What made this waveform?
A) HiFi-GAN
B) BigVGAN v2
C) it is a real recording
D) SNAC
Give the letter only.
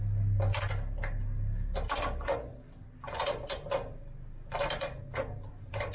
C